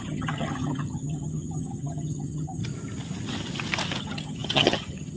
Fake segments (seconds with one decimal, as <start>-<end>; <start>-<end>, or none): 0.0-2.6; 4.0-5.2